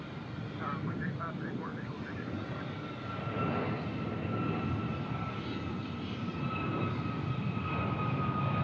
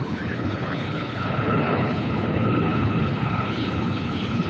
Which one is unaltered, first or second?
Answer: first